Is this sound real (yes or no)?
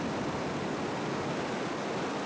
yes